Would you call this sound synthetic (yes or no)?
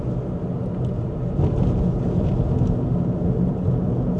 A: no